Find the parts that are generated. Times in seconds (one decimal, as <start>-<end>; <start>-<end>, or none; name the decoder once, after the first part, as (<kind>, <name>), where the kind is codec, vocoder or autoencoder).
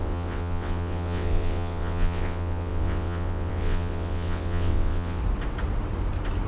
0.0-5.2 (vocoder, WaveNeXt)